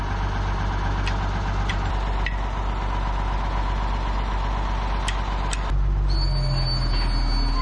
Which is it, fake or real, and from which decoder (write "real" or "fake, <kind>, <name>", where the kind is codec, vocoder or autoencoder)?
real